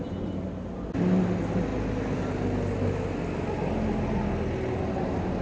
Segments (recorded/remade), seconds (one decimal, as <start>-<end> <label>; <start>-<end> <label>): 0.0-5.4 recorded